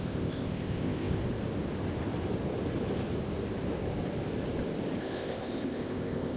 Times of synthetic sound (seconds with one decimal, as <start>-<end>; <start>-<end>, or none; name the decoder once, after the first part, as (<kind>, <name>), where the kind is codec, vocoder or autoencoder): 0.0-1.2 (codec, ZipCodec); 5.0-6.4